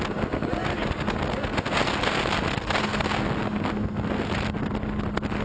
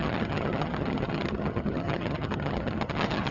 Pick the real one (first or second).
first